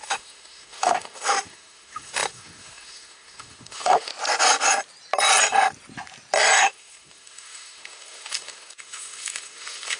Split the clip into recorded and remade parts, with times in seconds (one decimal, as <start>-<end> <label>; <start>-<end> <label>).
0.0-4.1 remade; 4.1-6.6 recorded; 6.6-10.0 remade